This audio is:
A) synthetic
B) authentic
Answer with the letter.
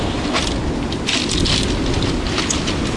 B